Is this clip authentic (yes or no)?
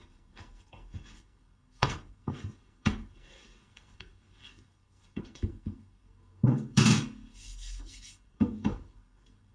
no